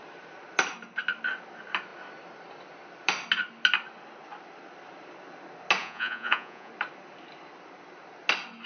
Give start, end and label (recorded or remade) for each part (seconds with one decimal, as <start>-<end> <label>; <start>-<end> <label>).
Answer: 0.0-5.8 recorded; 5.8-6.7 remade; 6.7-8.7 recorded